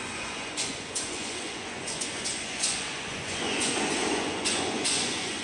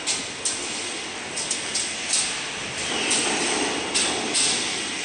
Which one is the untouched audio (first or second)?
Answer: second